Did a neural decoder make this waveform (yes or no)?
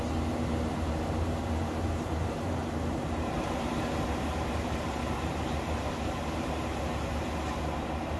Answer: yes